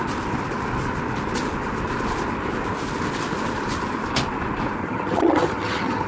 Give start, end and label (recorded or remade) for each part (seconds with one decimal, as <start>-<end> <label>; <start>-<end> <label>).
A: 0.0-4.8 recorded; 4.8-6.1 remade